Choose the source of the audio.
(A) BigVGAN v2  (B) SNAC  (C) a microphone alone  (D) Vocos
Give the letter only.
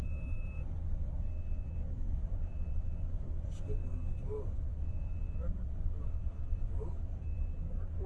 C